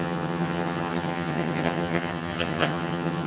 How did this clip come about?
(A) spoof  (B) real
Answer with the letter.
A